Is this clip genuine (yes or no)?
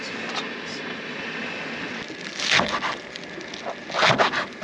yes